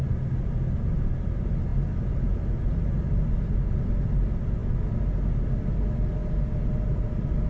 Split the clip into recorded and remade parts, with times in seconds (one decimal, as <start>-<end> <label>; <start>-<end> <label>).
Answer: 0.0-7.5 recorded

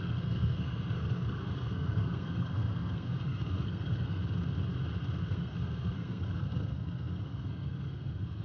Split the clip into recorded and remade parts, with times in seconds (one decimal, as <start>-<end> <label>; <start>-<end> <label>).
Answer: 0.0-4.2 remade; 4.2-5.3 recorded; 5.3-8.4 remade